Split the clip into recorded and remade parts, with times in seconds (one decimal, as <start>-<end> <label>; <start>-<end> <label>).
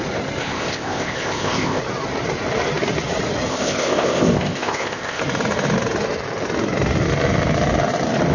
0.0-0.4 recorded; 0.4-1.8 remade; 1.8-3.5 recorded; 3.5-5.2 remade; 5.2-8.3 recorded